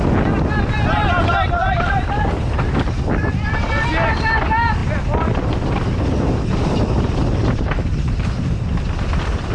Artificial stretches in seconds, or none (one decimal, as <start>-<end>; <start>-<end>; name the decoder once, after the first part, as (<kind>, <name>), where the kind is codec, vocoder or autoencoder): 1.6-2.1 (vocoder, BigVGAN v2); 7.4-8.2